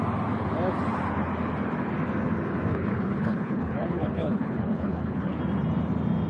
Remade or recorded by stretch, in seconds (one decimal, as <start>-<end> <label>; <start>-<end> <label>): 0.0-2.7 recorded; 2.7-5.4 remade; 5.4-6.3 recorded